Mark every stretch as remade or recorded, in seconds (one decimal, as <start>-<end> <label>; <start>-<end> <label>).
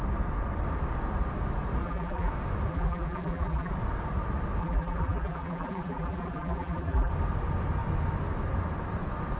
0.0-1.8 recorded; 1.8-2.3 remade; 2.3-2.7 recorded; 2.7-3.7 remade; 3.7-4.6 recorded; 4.6-7.1 remade; 7.1-9.4 recorded